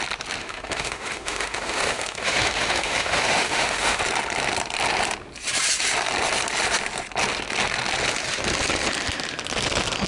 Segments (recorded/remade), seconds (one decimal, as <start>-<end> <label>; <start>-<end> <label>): 0.0-0.4 recorded; 0.4-4.0 remade; 4.0-10.1 recorded